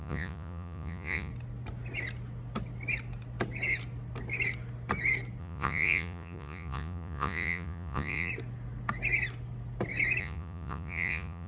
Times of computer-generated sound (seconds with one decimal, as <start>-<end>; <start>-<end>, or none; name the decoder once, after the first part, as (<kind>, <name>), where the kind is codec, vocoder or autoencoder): 0.0-1.3 (vocoder, Vocos); 5.4-8.3; 10.2-11.5